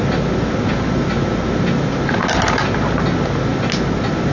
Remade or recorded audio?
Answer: recorded